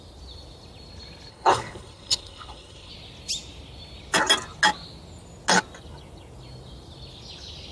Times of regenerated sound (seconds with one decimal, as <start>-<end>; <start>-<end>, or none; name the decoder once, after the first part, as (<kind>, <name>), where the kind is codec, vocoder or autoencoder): 1.3-2.9 (codec, HILCodec)